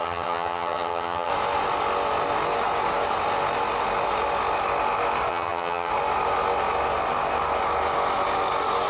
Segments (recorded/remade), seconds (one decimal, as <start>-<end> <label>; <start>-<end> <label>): 0.0-1.3 remade; 1.3-5.3 recorded; 5.3-5.9 remade; 5.9-8.9 recorded